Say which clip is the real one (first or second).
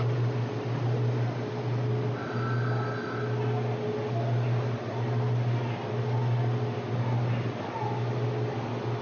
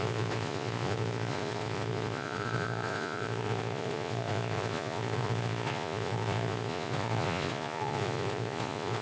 first